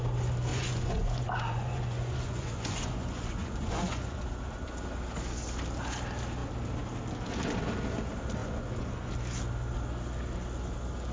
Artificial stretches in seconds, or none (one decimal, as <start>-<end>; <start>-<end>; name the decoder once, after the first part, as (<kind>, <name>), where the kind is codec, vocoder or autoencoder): 0.5-4.2 (vocoder, Vocos); 8.4-9.1